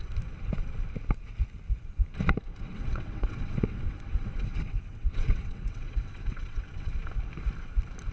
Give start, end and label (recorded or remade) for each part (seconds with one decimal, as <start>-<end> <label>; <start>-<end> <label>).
0.0-2.5 recorded; 2.5-6.9 remade; 6.9-8.1 recorded